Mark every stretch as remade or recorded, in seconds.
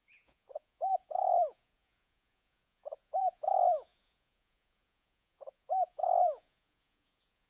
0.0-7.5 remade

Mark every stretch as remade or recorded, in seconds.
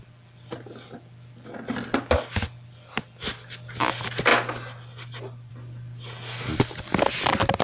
0.0-7.6 recorded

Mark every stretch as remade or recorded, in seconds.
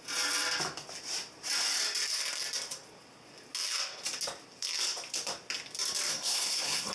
0.0-6.1 recorded; 6.1-6.9 remade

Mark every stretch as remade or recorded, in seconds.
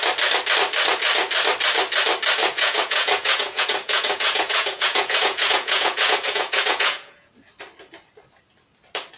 0.0-2.4 recorded; 2.4-7.3 remade; 7.3-9.2 recorded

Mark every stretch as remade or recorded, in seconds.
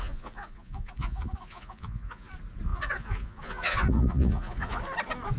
0.0-2.3 remade; 2.3-2.7 recorded; 2.7-4.8 remade; 4.8-5.4 recorded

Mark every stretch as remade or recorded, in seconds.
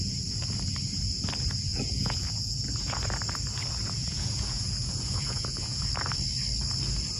0.0-1.7 recorded; 1.7-2.6 remade; 2.6-4.0 recorded; 4.0-5.9 remade; 5.9-7.2 recorded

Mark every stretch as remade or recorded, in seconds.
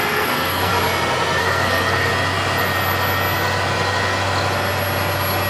0.0-0.7 remade; 0.7-1.4 recorded; 1.4-2.1 remade; 2.1-5.5 recorded